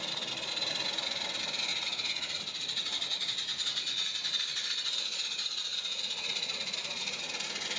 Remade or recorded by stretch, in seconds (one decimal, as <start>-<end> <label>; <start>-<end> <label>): 0.0-1.7 recorded; 1.7-2.4 remade; 2.4-5.7 recorded; 5.7-7.3 remade; 7.3-7.8 recorded